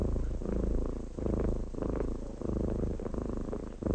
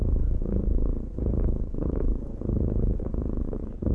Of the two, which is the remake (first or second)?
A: second